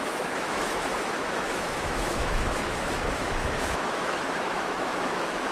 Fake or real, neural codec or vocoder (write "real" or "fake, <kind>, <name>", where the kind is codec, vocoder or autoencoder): fake, autoencoder, DAC-VAE